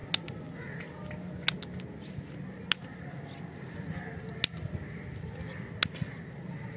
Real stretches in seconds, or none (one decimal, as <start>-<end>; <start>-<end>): 0.0-6.8